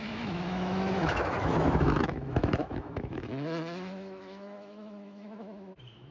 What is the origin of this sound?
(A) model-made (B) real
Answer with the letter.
A